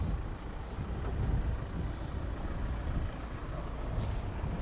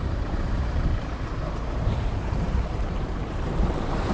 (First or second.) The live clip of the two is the first